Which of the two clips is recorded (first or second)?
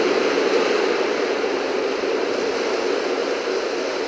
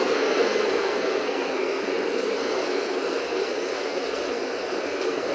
first